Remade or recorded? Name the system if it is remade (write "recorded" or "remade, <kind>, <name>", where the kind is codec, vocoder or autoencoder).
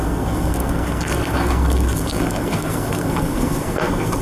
remade, codec, SNAC